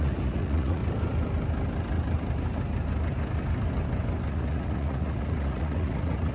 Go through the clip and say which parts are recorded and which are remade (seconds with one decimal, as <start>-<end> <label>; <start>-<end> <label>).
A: 0.0-0.8 remade; 0.8-4.3 recorded; 4.3-6.3 remade